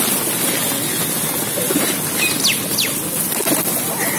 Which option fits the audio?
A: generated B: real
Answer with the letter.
B